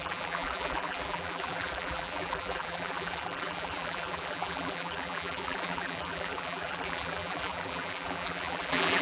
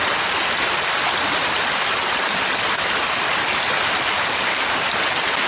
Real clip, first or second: second